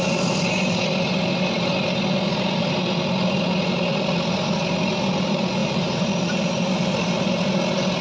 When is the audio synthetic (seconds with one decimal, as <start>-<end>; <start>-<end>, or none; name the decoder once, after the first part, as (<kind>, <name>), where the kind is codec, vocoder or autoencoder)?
5.6-6.8 (vocoder, BigVGAN v2)

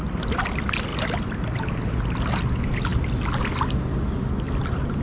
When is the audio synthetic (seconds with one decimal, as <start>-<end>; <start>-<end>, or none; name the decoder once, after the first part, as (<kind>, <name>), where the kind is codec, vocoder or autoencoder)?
none

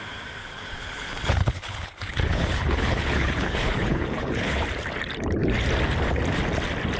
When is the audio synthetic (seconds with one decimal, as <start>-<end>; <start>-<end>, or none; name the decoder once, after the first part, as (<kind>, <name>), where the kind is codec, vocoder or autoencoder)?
0.4-4.6 (codec, HILCodec)

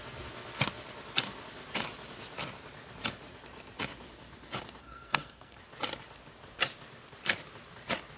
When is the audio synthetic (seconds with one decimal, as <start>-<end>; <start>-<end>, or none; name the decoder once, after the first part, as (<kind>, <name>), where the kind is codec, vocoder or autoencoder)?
4.8-5.6 (codec, SNAC)

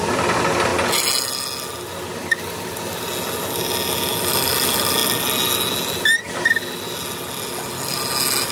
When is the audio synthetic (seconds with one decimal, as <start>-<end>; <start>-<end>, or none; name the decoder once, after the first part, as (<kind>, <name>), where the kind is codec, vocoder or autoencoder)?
none

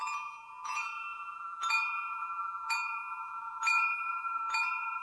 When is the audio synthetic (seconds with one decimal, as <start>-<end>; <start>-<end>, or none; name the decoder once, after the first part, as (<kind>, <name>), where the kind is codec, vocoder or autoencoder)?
0.0-5.0 (vocoder, Vocos)

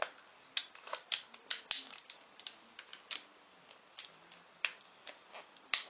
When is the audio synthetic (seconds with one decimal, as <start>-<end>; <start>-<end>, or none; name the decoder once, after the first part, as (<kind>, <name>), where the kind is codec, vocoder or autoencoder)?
none

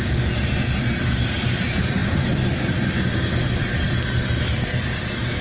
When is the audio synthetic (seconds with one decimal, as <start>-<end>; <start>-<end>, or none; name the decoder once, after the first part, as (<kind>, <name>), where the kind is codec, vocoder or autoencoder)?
none